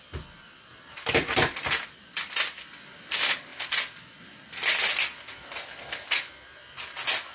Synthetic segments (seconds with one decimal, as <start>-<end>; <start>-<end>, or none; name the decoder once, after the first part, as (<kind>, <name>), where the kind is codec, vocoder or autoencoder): none